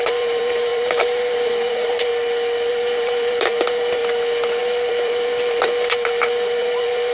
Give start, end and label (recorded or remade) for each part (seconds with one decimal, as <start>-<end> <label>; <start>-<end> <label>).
0.0-2.1 remade; 2.1-2.7 recorded; 2.7-4.0 remade; 4.0-4.6 recorded; 4.6-7.1 remade